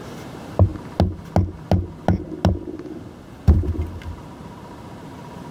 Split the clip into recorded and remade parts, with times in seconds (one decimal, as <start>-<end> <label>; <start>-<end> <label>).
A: 0.0-5.5 recorded